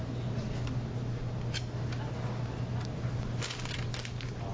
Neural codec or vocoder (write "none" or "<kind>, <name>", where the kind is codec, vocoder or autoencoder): none